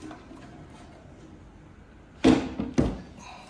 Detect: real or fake real